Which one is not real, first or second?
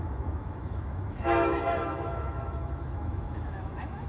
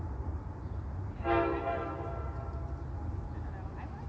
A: first